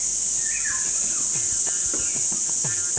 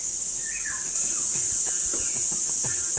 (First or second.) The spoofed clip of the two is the second